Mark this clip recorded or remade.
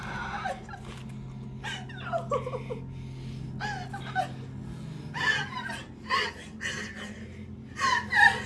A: recorded